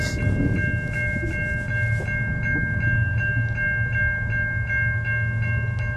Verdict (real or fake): real